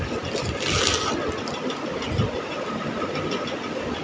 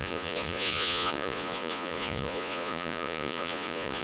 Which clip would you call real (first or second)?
first